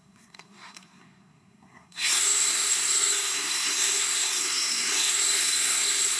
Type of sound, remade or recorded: remade